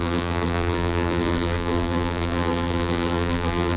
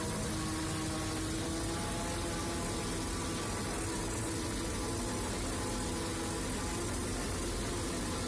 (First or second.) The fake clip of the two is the first